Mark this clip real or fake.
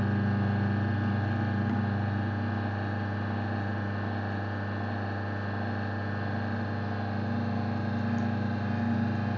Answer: real